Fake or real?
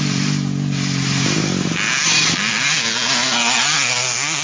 real